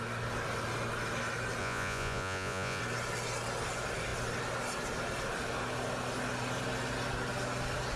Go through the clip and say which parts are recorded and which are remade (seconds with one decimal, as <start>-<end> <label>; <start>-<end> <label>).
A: 0.0-1.6 recorded; 1.6-2.8 remade; 2.8-8.0 recorded